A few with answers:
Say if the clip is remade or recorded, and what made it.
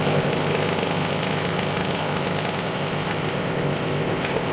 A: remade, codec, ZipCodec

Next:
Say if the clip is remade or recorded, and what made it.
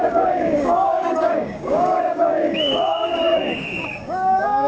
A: remade, codec, DAC